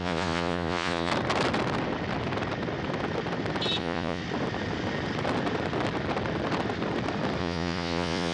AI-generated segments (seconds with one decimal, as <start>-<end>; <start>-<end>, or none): 0.0-1.1; 3.8-4.2; 7.4-8.3